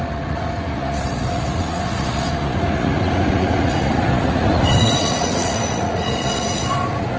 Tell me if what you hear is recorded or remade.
remade